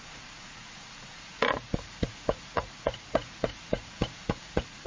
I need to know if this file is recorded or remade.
remade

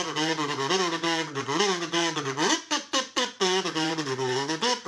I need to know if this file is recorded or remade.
remade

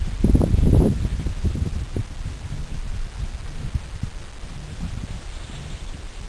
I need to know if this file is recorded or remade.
recorded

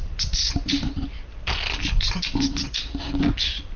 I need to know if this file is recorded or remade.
recorded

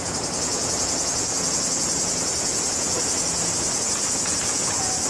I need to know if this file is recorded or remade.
remade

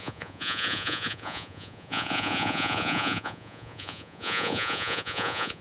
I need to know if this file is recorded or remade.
remade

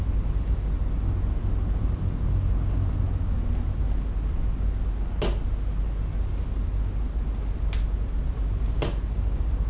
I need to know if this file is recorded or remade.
recorded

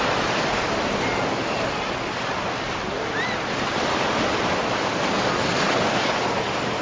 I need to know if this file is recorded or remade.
recorded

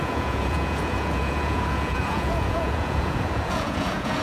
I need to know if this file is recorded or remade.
remade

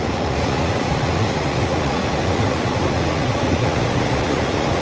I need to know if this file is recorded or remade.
remade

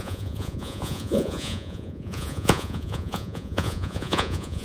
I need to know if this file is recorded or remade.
remade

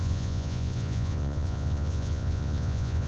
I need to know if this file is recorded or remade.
remade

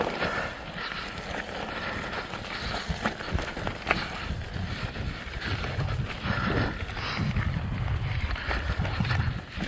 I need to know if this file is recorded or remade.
recorded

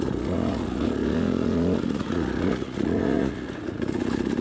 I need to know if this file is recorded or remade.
remade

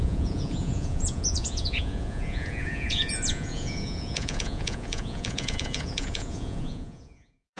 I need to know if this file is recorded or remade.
remade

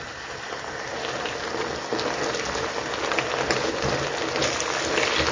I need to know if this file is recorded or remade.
recorded